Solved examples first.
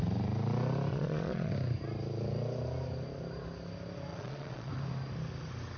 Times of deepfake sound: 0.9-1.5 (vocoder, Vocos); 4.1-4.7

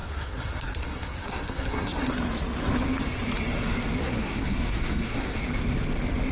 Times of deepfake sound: 0.0-2.1 (codec, SNAC); 4.0-5.4

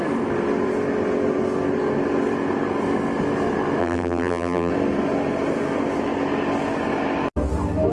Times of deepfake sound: 3.8-4.7 (vocoder, BigVGAN v2)

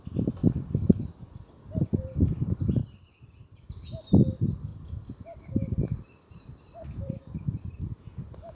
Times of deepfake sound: 4.7-7.8 (vocoder, BigVGAN v2)